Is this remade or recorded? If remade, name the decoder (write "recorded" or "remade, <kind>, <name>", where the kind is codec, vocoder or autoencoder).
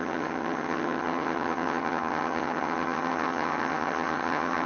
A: remade, vocoder, HiFi-GAN